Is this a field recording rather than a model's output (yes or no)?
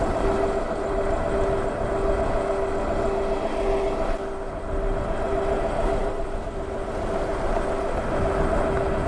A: yes